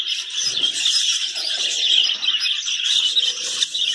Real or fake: real